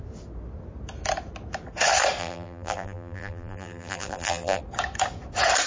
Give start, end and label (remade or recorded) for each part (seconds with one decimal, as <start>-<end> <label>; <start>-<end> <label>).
0.0-2.2 recorded; 2.2-4.6 remade; 4.6-5.7 recorded

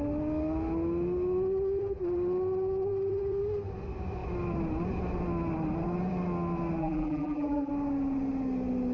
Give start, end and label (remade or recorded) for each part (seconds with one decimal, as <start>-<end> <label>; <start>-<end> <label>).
0.0-6.8 recorded; 6.8-7.7 remade; 7.7-8.9 recorded

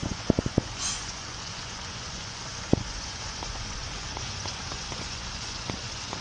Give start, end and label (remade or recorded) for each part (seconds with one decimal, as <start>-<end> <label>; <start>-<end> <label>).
0.0-6.2 remade

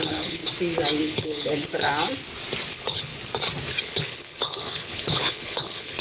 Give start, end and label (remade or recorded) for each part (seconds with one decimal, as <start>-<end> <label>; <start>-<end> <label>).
0.0-0.4 remade; 0.4-1.0 recorded; 1.0-1.9 remade; 1.9-2.7 recorded; 2.7-3.1 remade; 3.1-3.8 recorded; 3.8-6.0 remade

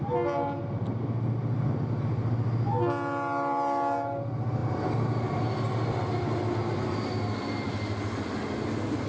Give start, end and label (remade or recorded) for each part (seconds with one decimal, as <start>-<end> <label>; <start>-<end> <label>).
0.0-9.1 recorded

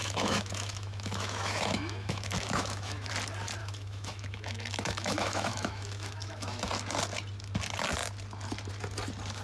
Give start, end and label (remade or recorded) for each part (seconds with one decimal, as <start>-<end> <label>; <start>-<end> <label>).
0.0-3.1 remade; 3.1-3.6 recorded; 3.6-6.7 remade; 6.7-9.4 recorded